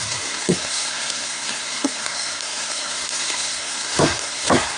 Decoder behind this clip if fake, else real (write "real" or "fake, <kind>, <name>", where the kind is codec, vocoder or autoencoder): fake, codec, SNAC